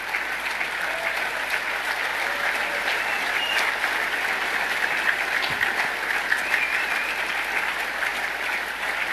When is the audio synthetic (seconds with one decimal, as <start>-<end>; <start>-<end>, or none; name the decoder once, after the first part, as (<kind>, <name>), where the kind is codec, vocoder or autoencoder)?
2.1-5.0 (vocoder, BigVGAN v2); 6.4-7.3; 8.1-8.7